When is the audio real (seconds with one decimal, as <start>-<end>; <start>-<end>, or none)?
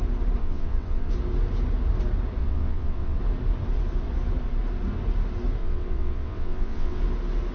0.0-0.4; 1.1-2.4; 3.2-5.6; 7.0-7.5